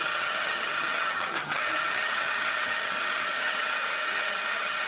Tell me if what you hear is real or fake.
fake